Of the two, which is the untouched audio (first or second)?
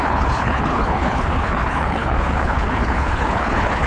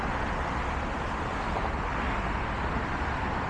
second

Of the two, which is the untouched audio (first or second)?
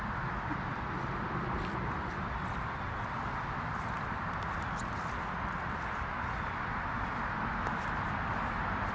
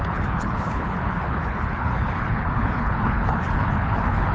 first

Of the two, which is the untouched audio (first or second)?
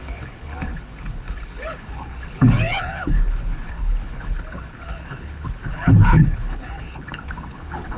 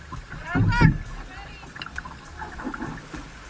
second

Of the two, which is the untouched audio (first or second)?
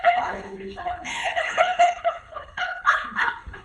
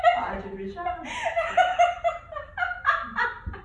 second